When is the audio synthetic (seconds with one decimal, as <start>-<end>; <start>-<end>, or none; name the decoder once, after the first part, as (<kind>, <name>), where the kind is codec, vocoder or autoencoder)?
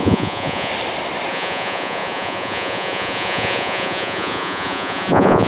0.0-0.7 (vocoder, Vocos); 1.3-5.5